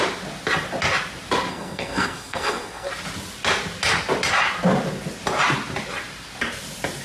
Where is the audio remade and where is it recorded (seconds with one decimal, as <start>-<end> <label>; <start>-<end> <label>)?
0.0-1.5 recorded; 1.5-2.9 remade; 2.9-7.0 recorded